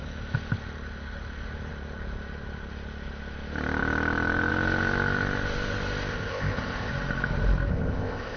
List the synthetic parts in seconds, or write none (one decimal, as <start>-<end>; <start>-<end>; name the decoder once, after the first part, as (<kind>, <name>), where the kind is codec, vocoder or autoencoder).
6.1-6.9 (codec, ZipCodec); 7.7-8.4